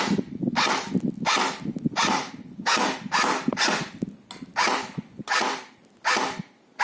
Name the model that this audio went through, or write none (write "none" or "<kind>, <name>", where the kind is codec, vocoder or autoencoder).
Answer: none